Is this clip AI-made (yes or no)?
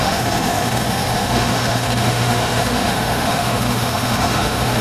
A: yes